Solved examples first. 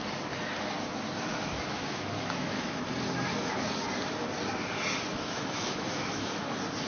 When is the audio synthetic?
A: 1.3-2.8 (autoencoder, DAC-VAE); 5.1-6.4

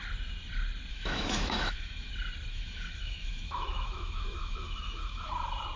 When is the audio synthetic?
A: 0.9-2.1 (autoencoder, DAC-VAE); 2.5-5.3

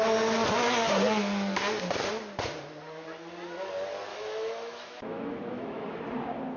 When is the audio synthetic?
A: 4.1-6.0 (autoencoder, DAC-VAE)